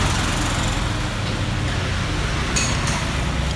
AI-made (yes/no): no